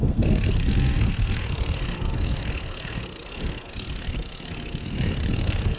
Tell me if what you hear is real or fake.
fake